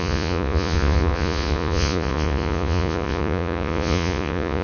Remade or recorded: remade